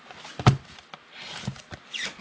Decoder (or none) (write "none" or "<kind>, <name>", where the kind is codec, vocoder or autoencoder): none